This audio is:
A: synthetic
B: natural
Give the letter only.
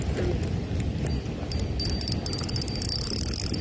B